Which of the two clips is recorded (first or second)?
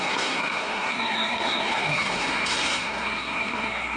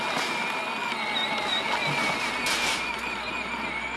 second